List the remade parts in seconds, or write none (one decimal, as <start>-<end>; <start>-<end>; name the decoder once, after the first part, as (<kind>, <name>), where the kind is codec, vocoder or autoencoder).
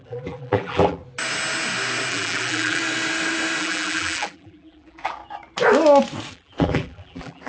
0.0-1.0 (vocoder, BigVGAN v2); 2.1-2.8; 3.6-5.2; 6.3-7.5